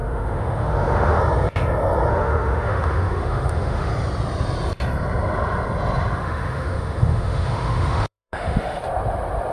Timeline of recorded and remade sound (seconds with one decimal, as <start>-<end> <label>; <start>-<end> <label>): 0.0-1.2 remade; 1.2-2.1 recorded; 2.1-3.9 remade; 3.9-6.2 recorded; 6.2-8.8 remade; 8.8-9.5 recorded